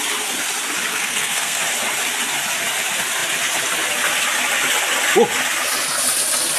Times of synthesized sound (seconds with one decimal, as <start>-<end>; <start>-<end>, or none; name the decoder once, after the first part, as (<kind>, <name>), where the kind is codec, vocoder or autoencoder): 0.9-1.6 (codec, SNAC)